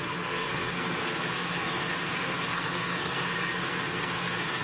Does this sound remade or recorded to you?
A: remade